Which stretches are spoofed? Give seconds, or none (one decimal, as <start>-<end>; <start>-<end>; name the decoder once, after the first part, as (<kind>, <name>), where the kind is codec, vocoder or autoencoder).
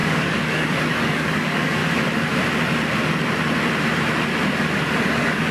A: 0.0-1.8 (codec, DAC); 5.1-5.5